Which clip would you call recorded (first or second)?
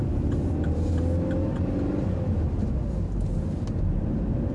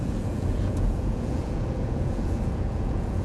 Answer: first